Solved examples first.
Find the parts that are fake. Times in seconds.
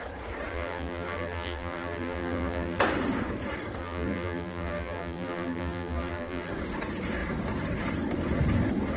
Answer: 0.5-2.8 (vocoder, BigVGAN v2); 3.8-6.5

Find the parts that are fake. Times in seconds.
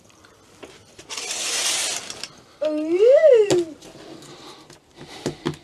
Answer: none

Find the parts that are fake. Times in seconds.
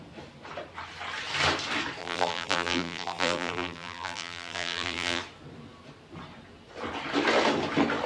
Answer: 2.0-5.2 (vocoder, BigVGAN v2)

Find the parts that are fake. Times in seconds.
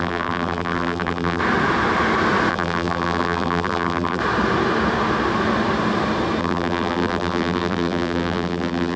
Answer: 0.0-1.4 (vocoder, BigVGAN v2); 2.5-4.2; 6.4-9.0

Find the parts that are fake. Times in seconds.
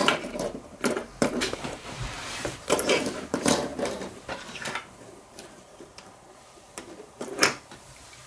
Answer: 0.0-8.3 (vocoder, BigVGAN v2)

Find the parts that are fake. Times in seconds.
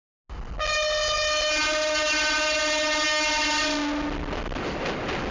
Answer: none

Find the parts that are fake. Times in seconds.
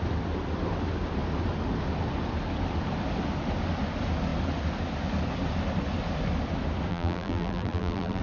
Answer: 6.9-8.2 (vocoder, BigVGAN v2)